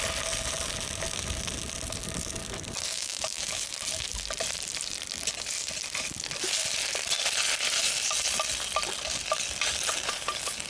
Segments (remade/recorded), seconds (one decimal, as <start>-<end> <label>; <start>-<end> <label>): 0.0-2.9 recorded; 2.9-3.6 remade; 3.6-10.7 recorded